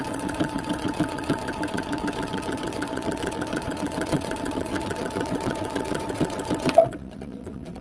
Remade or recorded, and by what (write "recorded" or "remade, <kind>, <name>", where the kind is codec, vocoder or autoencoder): remade, vocoder, WaveNeXt